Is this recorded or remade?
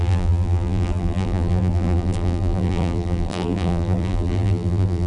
remade